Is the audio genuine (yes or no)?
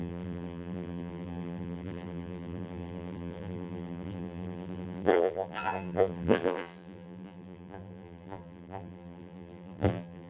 no